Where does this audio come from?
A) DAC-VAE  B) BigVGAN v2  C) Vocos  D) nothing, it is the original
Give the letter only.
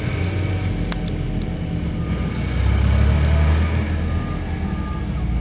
D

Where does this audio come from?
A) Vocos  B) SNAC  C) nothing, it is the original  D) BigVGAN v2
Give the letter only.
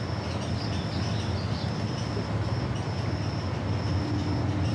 C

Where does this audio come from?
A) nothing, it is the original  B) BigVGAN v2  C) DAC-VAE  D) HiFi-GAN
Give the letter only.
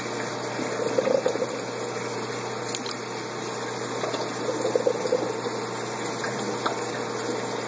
A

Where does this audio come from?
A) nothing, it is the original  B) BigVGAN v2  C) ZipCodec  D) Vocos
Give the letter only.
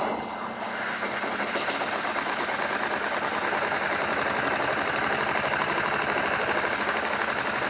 A